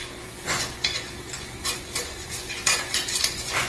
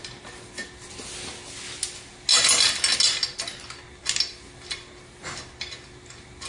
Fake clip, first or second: first